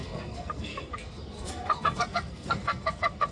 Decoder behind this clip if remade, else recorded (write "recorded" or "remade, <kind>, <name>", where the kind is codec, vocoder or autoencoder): remade, codec, SNAC